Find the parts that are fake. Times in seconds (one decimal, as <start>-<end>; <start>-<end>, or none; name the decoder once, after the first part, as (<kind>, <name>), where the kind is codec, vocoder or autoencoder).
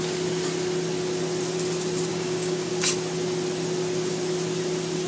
2.1-2.7 (codec, DAC)